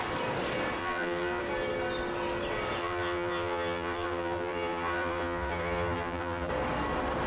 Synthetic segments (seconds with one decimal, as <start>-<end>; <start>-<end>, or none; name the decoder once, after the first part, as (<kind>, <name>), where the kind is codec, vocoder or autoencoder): 0.8-1.4 (vocoder, BigVGAN v2); 2.8-6.5